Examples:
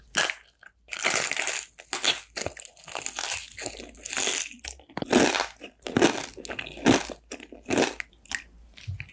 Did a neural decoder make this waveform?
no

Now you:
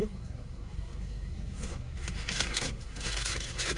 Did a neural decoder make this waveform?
yes